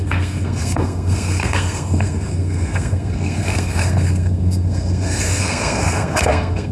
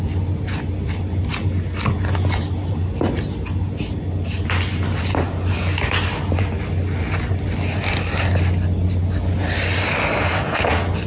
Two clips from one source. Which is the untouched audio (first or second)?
second